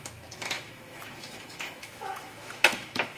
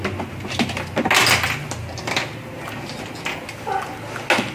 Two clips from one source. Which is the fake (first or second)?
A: first